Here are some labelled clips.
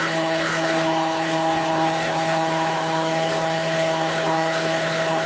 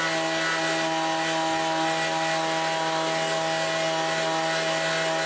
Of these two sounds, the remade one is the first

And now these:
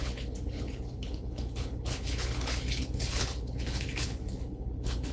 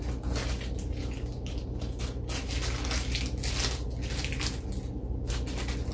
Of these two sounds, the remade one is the first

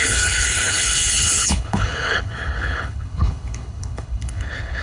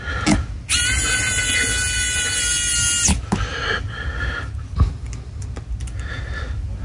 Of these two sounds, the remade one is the first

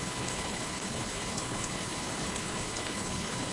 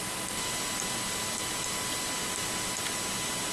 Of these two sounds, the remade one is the first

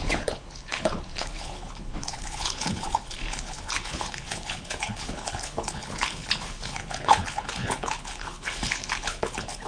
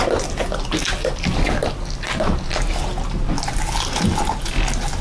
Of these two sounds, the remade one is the first